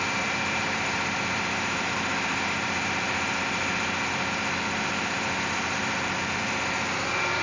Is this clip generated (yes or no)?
no